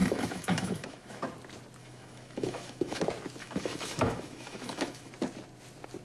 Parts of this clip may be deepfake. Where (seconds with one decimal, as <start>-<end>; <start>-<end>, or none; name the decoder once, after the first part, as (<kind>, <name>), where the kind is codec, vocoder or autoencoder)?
0.0-1.2 (autoencoder, DAC-VAE); 1.8-3.0; 3.4-5.1